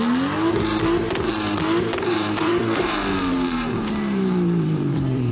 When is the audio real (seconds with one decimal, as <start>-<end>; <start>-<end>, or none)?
0.0-2.1